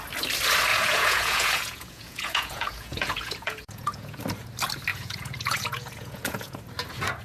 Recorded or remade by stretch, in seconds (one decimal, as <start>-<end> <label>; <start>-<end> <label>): 0.0-0.7 recorded; 0.7-4.2 remade; 4.2-4.9 recorded; 4.9-6.6 remade; 6.6-7.2 recorded